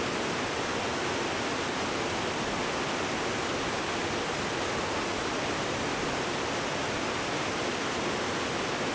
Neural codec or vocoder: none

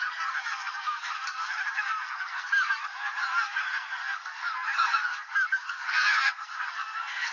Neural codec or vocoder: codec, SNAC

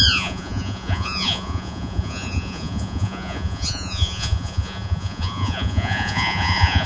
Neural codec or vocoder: vocoder, Vocos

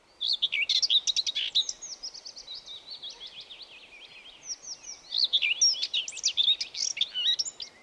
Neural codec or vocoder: none